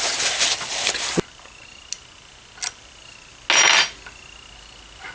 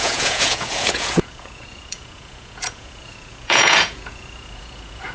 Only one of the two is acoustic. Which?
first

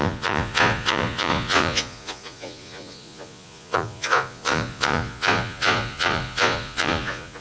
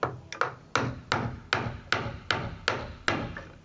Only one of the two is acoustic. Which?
second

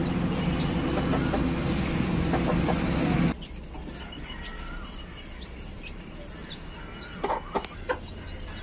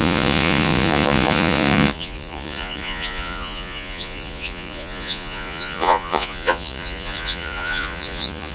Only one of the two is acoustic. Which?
first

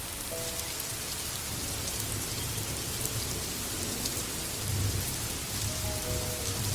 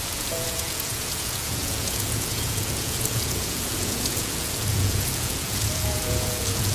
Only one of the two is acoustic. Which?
first